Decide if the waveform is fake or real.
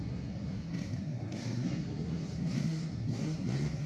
fake